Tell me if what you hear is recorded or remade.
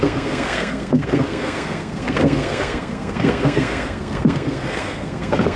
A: remade